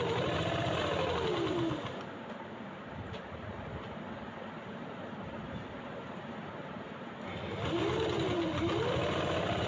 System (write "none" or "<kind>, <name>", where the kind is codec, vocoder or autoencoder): none